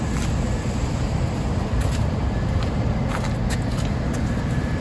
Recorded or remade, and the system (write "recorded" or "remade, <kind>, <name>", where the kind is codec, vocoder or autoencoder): recorded